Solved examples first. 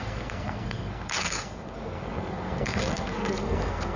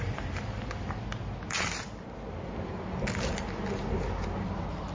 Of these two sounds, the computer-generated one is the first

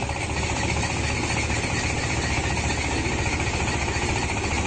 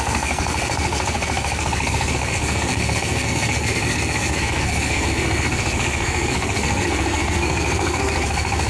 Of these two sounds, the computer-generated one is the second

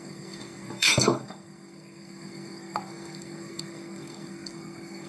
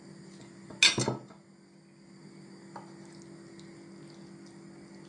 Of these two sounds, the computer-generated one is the first